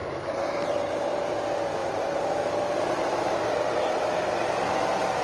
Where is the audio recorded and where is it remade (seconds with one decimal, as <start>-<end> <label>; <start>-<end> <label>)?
0.0-1.3 remade; 1.3-1.8 recorded; 1.8-4.8 remade; 4.8-5.2 recorded